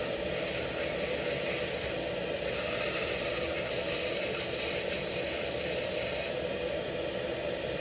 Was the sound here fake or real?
real